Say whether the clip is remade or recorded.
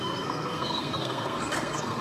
remade